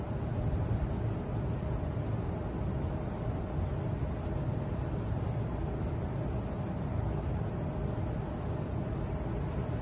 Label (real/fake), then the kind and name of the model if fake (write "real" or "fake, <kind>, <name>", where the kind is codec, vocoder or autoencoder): real